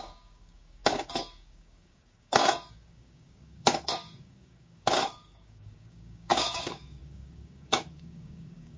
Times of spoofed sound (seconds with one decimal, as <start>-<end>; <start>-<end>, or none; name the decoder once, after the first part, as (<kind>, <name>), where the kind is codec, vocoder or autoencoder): 0.0-8.8 (codec, DAC)